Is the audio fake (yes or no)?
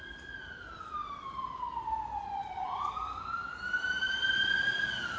no